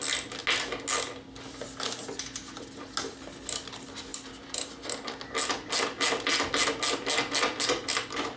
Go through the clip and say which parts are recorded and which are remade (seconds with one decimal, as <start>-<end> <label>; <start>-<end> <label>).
0.0-4.1 recorded; 4.1-4.7 remade; 4.7-8.4 recorded